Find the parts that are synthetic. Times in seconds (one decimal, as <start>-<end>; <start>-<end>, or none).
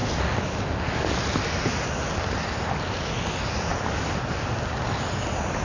none